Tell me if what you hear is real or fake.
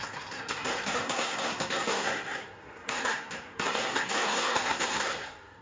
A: fake